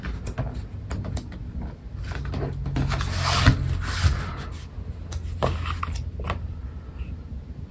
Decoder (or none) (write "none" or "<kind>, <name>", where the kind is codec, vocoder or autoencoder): none